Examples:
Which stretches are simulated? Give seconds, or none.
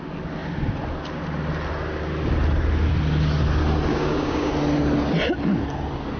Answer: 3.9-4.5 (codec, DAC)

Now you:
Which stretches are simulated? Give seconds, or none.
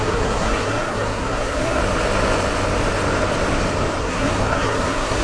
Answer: 0.0-1.8 (codec, SNAC); 4.0-5.2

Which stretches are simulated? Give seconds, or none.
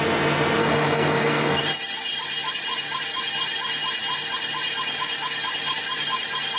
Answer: 0.6-1.6 (codec, SNAC)